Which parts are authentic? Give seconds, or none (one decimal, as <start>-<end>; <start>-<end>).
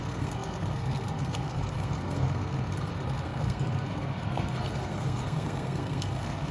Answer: none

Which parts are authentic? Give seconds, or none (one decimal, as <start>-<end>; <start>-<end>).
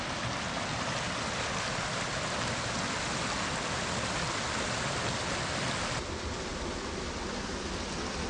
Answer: 0.0-8.3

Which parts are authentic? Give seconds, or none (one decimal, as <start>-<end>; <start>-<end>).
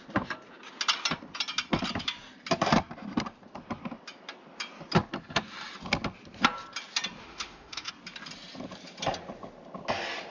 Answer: 0.0-7.2; 7.9-10.3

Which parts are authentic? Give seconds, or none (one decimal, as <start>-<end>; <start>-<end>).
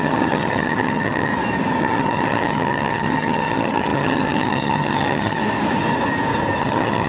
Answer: 1.3-1.8; 5.4-6.6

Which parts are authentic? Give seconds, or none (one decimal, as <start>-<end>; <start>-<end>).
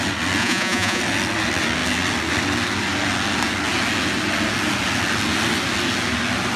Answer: 0.0-0.4; 1.0-6.6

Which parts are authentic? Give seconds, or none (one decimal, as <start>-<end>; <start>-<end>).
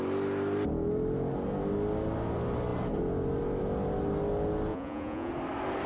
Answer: 0.0-4.7; 5.3-5.9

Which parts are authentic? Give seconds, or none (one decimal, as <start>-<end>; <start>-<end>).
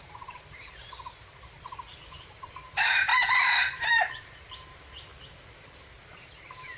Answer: 3.1-3.9; 5.1-5.8